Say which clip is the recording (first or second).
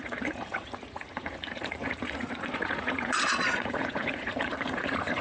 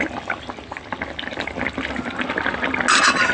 second